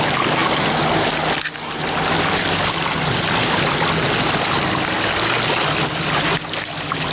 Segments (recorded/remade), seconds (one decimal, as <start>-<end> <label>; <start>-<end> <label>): 0.0-7.1 recorded